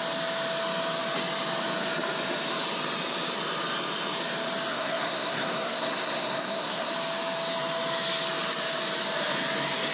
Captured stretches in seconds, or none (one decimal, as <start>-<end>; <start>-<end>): 0.0-4.7; 6.9-9.9